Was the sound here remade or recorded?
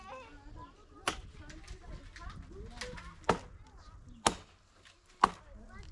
recorded